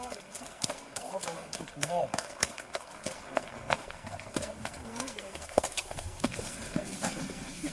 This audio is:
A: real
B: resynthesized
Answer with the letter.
B